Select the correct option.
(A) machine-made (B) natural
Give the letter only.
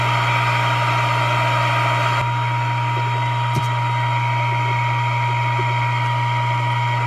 B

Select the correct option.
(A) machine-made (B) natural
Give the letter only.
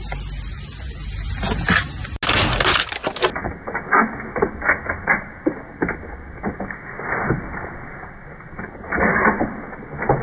B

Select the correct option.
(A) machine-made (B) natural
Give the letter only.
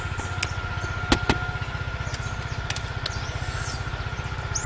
B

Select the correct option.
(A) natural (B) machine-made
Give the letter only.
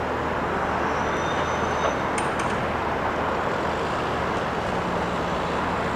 A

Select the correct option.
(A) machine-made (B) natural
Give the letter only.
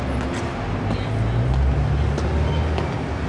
B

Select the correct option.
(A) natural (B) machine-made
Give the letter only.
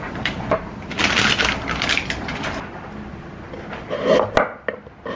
A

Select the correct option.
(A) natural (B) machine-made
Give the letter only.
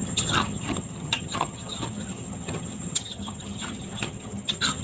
B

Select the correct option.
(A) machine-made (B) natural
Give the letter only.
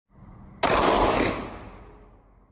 B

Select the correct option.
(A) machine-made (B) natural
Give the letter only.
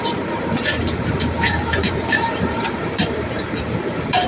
A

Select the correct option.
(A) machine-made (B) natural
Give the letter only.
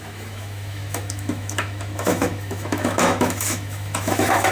A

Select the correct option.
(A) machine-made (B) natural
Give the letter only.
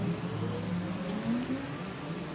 B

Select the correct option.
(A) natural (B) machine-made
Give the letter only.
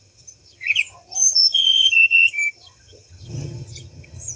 B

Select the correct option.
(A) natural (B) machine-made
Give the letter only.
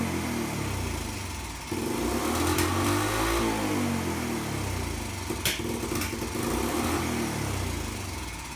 A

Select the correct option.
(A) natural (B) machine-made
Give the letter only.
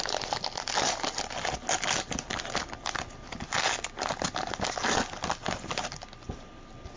A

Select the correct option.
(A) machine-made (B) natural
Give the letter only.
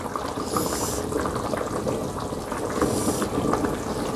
B